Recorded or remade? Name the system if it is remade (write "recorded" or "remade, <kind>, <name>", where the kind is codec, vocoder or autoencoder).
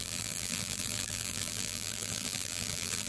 remade, vocoder, BigVGAN v2